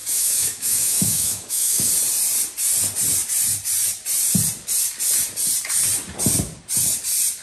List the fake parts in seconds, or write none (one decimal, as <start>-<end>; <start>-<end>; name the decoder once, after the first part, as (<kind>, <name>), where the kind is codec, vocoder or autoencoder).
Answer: 0.0-1.9 (autoencoder, DAC-VAE)